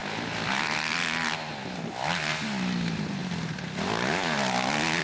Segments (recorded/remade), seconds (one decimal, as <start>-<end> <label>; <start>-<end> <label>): 0.0-5.0 recorded